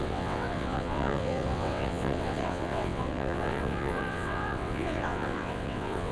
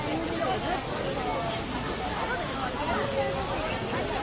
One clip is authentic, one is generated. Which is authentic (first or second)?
second